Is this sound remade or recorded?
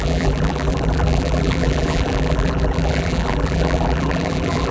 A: remade